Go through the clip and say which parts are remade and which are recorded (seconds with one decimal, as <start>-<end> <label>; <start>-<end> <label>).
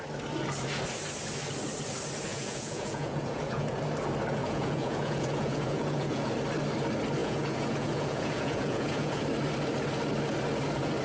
0.0-2.3 recorded; 2.3-3.8 remade; 3.8-4.4 recorded; 4.4-6.3 remade; 6.3-7.2 recorded; 7.2-9.2 remade; 9.2-11.0 recorded